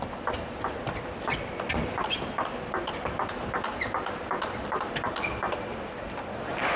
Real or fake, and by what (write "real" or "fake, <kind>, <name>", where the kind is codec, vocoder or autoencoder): fake, vocoder, BigVGAN v2